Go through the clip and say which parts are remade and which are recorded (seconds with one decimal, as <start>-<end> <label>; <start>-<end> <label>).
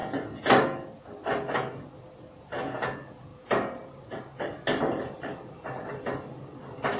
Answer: 0.0-3.3 recorded; 3.3-6.0 remade; 6.0-7.0 recorded